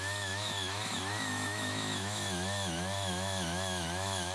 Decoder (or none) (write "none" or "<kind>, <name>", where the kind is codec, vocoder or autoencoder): autoencoder, DAC-VAE